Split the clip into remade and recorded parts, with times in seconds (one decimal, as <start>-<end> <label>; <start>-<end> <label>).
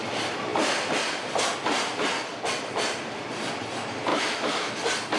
0.0-4.1 recorded; 4.1-4.7 remade; 4.7-5.2 recorded